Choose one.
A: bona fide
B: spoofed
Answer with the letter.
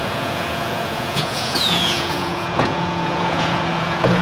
B